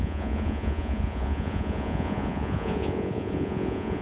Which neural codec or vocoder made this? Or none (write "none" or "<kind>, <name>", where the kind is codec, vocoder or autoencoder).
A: vocoder, Vocos